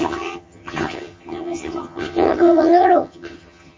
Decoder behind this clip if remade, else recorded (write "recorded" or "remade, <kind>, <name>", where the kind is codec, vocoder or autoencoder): remade, vocoder, HiFi-GAN